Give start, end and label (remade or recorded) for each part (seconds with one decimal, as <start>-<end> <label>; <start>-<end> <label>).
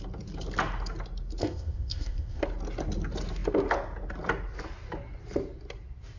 0.0-1.4 recorded; 1.4-2.4 remade; 2.4-6.2 recorded